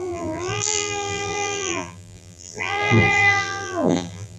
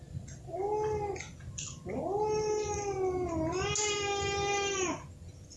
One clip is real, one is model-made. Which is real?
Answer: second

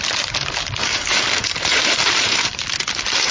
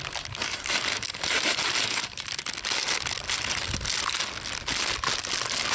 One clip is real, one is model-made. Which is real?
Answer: second